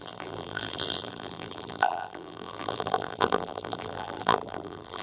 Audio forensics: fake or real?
fake